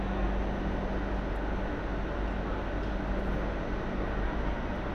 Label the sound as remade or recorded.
recorded